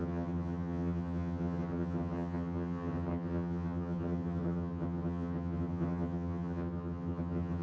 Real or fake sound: fake